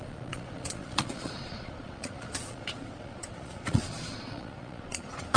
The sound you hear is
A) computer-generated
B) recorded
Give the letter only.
A